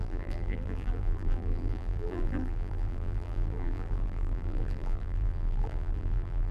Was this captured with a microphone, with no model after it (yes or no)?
no